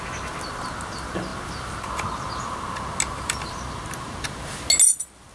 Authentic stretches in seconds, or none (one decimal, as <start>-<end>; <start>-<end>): 0.0-5.3